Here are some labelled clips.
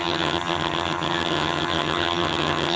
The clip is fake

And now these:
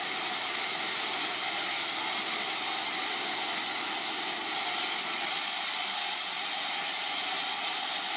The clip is real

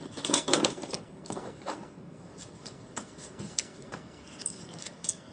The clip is fake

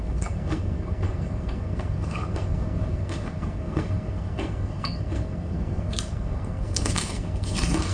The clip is fake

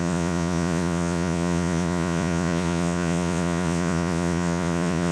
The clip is fake